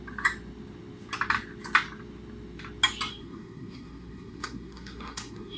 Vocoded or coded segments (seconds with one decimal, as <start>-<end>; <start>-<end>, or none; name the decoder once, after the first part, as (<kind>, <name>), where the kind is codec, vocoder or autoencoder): 3.1-5.6 (codec, SNAC)